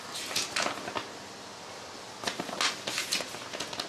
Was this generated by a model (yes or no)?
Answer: no